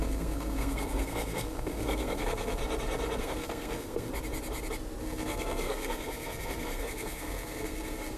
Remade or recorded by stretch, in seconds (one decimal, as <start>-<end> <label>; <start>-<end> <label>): 0.0-2.6 remade; 2.6-3.2 recorded; 3.2-4.1 remade; 4.1-5.0 recorded; 5.0-8.2 remade